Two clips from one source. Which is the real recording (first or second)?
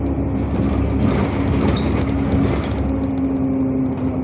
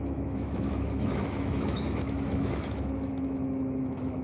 first